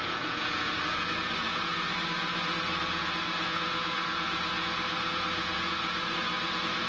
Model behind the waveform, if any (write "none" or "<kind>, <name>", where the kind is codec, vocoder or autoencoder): vocoder, Vocos